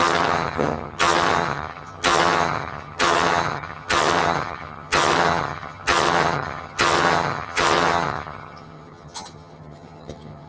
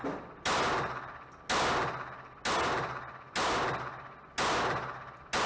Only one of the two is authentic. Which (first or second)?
second